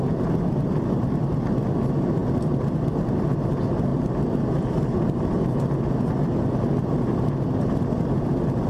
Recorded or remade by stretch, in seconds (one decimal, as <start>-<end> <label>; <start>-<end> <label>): 0.0-8.7 recorded